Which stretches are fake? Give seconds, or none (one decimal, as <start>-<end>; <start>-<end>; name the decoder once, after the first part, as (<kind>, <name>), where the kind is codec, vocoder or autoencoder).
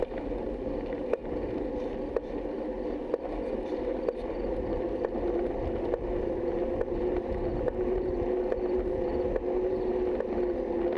none